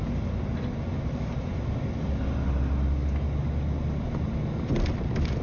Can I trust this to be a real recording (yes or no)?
yes